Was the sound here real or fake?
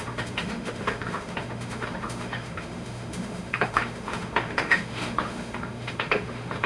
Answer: fake